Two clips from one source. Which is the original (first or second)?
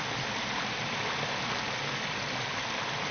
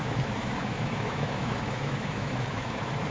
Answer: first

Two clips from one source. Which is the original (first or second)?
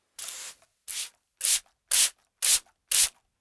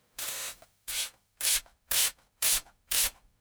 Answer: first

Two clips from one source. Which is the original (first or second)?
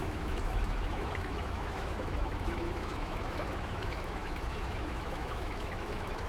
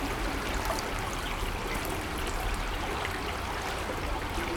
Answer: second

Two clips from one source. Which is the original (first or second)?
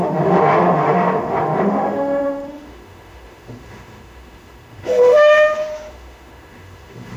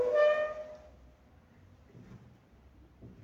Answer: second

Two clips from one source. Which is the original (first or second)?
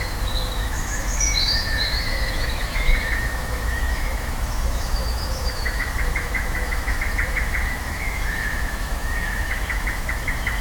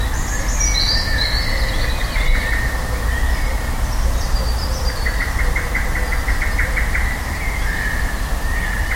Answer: second